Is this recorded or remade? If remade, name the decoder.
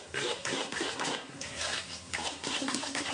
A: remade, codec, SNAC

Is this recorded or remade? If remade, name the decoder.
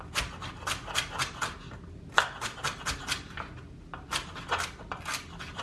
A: recorded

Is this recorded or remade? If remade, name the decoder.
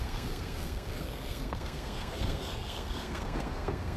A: remade, codec, SNAC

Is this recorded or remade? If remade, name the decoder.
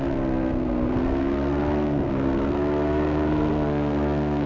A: remade, codec, SNAC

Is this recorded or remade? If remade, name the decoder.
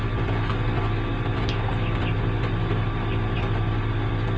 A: recorded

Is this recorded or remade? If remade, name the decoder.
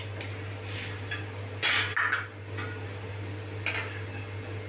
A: recorded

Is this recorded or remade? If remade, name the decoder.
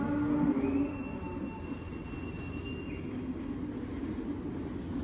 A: recorded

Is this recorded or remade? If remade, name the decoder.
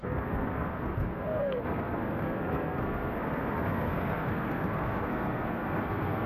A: remade, codec, SNAC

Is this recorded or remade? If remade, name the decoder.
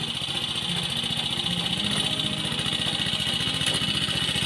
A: recorded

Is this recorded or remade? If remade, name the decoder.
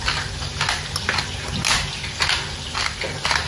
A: recorded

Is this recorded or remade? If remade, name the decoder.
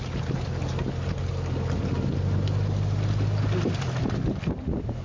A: recorded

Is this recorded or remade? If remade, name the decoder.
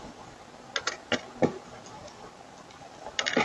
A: recorded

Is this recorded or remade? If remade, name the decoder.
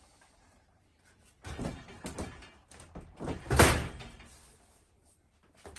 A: recorded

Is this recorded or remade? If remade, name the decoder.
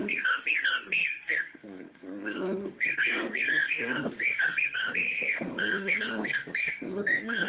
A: remade, codec, SNAC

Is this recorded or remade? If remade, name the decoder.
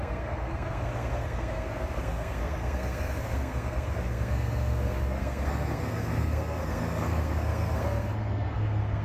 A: remade, codec, SNAC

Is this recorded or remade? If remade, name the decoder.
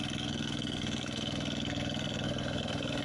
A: remade, codec, SNAC